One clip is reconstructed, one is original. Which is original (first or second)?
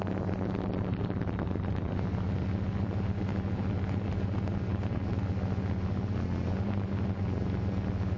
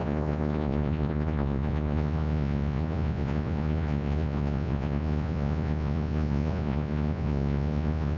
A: first